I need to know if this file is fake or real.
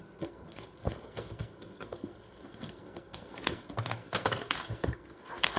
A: fake